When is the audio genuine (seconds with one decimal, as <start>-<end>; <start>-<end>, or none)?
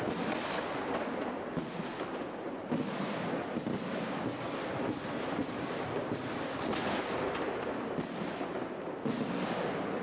0.0-10.0